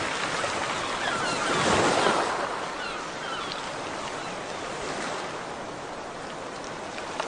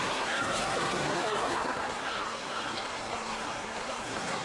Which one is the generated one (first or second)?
second